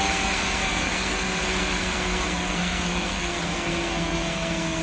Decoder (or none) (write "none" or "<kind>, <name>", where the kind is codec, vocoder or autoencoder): codec, SNAC